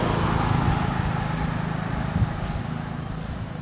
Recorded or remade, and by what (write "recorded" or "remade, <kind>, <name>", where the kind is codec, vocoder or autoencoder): recorded